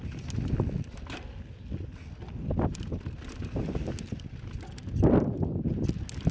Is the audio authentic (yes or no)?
yes